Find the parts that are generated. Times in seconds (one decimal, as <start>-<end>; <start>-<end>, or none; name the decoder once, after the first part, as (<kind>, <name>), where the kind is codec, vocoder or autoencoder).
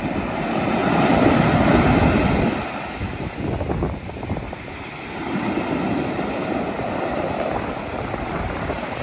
0.0-0.8 (vocoder, BigVGAN v2); 4.0-9.0